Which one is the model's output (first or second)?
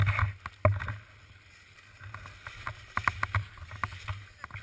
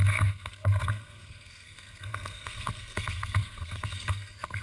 second